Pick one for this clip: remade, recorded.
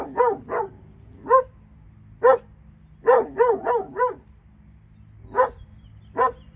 recorded